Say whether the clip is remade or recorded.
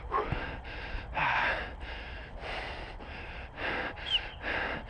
recorded